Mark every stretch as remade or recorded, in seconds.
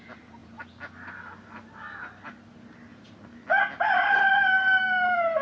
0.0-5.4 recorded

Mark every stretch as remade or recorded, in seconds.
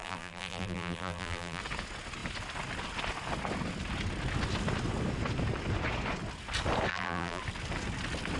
0.0-1.6 remade; 1.6-6.9 recorded; 6.9-7.4 remade; 7.4-8.4 recorded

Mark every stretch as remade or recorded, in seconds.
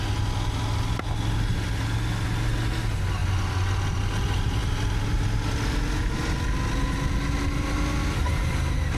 0.0-3.2 recorded; 3.2-4.0 remade; 4.0-9.0 recorded